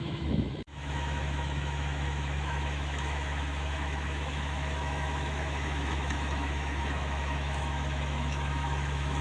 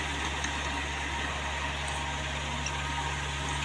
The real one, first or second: second